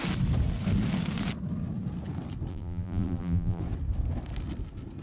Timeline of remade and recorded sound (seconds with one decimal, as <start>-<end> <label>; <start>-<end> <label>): 0.0-2.5 recorded; 2.5-3.6 remade; 3.6-5.0 recorded